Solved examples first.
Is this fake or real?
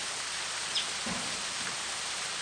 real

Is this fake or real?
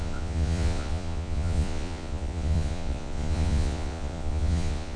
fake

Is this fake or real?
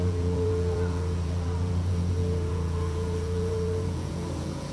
fake